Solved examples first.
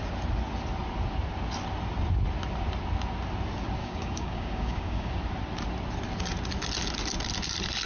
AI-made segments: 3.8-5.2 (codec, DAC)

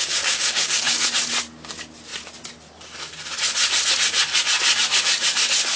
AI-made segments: 0.0-1.0 (codec, DAC)

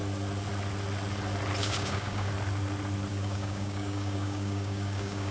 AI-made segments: 1.6-2.3 (codec, DAC); 3.1-5.3

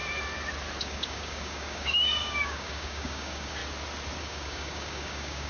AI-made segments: 0.8-3.6 (codec, DAC); 4.2-5.5

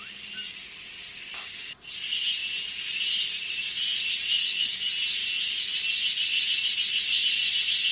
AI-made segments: 4.4-4.9 (codec, DAC)